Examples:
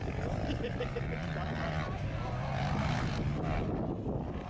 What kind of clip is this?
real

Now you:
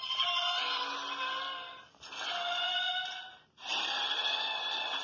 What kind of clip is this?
real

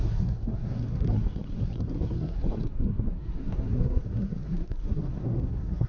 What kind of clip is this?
fake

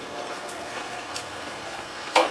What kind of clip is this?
fake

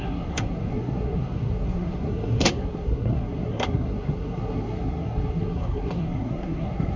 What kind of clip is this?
fake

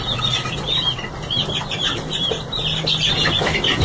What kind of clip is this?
real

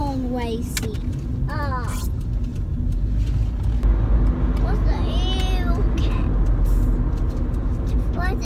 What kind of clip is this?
real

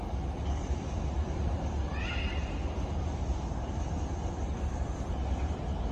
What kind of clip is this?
real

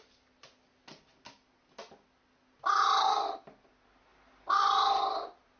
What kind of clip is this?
real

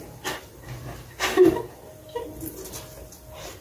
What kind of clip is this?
real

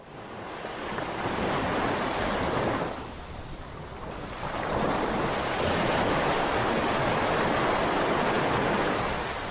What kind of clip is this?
real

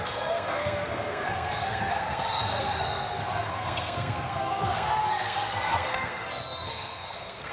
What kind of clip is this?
fake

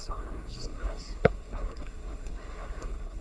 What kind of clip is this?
fake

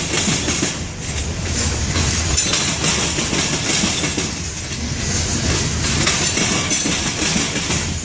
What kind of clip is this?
real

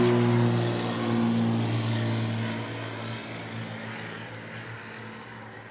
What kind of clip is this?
real